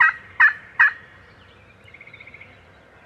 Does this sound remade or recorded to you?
remade